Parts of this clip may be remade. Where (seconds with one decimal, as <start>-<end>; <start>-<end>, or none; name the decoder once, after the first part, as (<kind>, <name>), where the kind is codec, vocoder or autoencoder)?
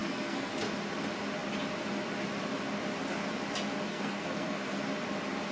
0.0-0.5 (codec, SNAC); 3.9-4.8